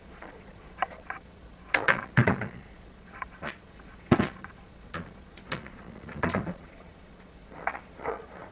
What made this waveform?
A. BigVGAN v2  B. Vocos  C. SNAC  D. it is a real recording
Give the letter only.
B